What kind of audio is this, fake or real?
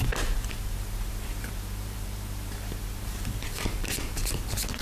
fake